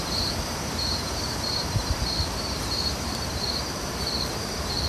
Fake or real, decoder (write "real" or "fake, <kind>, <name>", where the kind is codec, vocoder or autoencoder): fake, vocoder, BigVGAN v2